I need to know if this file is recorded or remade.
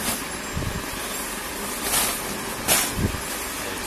recorded